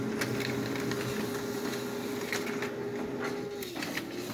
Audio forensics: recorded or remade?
recorded